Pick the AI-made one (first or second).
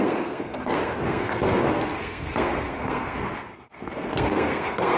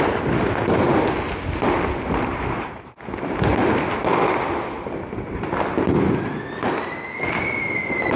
first